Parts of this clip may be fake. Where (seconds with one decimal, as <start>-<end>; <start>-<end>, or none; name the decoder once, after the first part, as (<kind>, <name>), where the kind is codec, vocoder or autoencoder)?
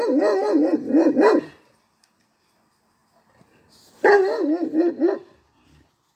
none